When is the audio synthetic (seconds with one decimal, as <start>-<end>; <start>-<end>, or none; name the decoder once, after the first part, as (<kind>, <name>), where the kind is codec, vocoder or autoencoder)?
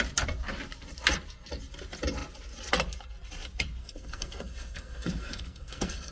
3.8-6.1 (codec, SNAC)